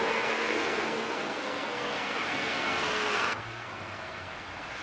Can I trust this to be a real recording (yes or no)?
no